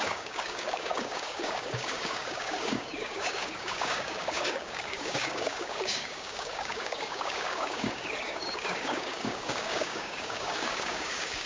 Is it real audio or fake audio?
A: fake